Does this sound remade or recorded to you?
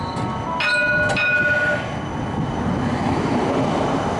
recorded